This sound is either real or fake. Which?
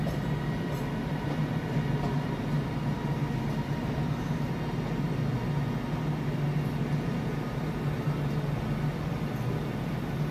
real